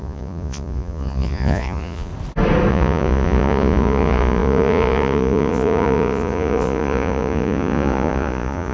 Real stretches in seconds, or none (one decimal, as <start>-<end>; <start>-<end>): 2.1-2.7